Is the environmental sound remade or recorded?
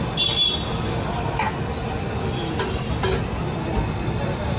recorded